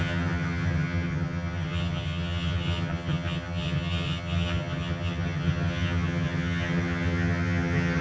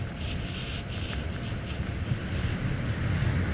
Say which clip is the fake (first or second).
first